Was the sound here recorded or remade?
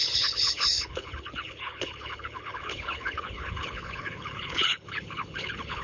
remade